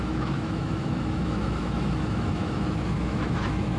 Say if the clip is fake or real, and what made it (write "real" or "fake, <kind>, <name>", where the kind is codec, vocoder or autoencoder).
fake, autoencoder, DAC-VAE